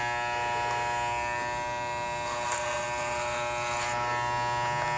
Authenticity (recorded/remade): recorded